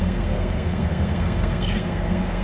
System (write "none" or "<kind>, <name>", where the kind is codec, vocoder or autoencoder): codec, SNAC